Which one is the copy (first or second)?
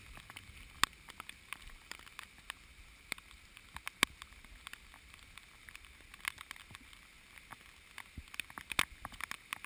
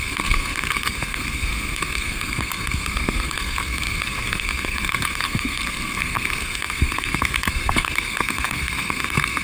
second